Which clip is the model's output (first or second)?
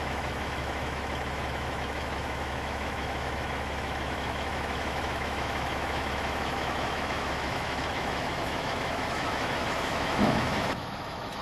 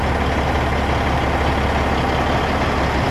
first